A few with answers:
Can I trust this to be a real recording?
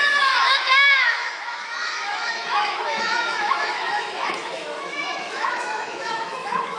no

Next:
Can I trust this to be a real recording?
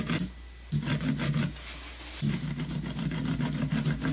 yes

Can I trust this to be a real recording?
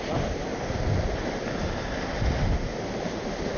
yes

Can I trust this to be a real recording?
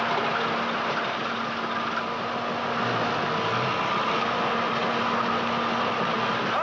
yes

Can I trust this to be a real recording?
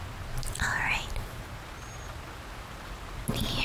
yes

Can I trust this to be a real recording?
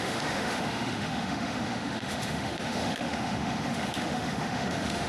no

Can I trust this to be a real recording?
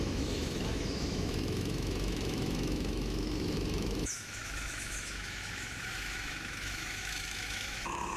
no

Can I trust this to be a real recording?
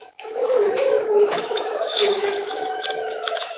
no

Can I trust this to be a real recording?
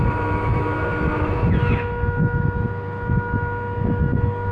no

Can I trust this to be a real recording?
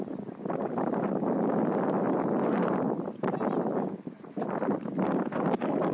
yes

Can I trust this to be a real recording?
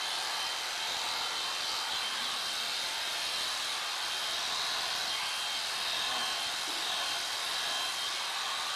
yes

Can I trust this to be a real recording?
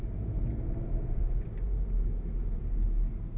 yes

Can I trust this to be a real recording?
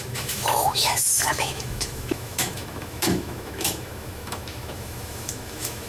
no